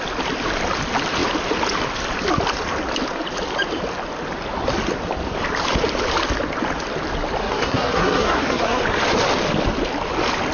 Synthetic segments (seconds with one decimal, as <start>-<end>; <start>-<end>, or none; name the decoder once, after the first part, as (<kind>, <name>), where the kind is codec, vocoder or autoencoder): 7.4-8.8 (codec, SNAC)